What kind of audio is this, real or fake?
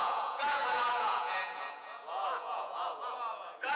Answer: fake